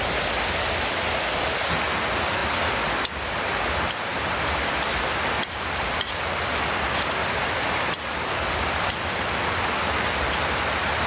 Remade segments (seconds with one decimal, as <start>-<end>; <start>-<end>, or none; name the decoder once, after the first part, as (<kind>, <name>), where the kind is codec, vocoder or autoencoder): 2.4-3.0 (vocoder, BigVGAN v2); 4.1-6.1